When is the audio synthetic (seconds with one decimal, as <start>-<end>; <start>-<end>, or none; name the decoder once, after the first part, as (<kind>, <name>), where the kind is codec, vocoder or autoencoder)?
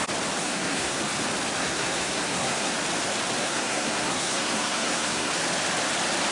0.4-1.0 (codec, SNAC); 1.6-2.7; 3.4-5.3